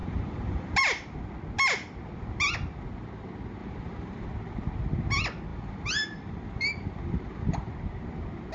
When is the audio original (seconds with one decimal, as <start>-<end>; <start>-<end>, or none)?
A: 0.8-3.6; 4.3-5.5; 7.7-8.5